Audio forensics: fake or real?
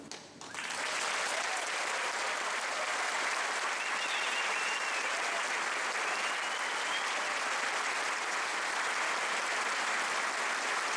real